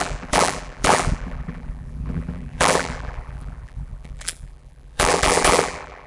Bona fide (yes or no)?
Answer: no